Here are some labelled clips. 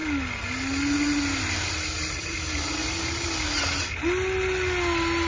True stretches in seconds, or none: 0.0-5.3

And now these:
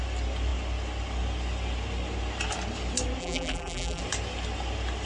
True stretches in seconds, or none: 0.0-3.2; 4.0-5.1